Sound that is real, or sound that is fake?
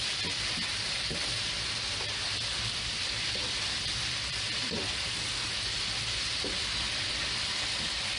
fake